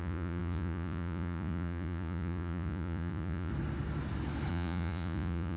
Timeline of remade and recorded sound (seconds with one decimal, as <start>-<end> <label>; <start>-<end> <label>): 0.0-3.5 remade; 3.5-4.5 recorded; 4.5-5.6 remade